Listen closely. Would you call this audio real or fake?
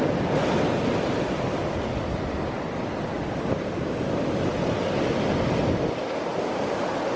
real